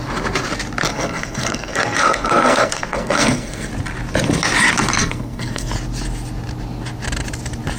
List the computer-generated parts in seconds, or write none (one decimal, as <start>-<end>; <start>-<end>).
0.9-3.7; 5.0-5.7